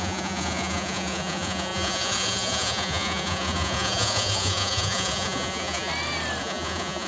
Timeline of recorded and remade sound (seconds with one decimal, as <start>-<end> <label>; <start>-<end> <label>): 0.0-5.9 remade; 5.9-6.4 recorded; 6.4-7.1 remade